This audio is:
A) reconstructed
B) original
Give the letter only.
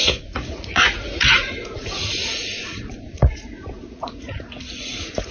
A